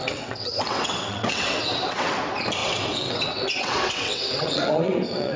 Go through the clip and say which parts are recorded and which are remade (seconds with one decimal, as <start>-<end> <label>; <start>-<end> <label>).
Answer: 0.0-2.2 remade; 2.2-2.6 recorded; 2.6-5.4 remade